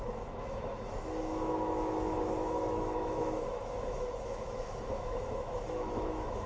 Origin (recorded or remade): remade